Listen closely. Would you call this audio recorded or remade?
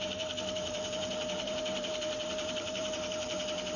remade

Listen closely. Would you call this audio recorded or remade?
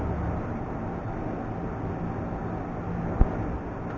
recorded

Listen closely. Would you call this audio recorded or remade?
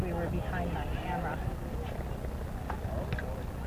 recorded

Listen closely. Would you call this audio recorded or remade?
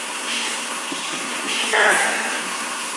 remade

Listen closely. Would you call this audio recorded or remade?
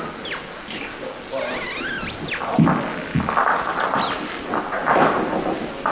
recorded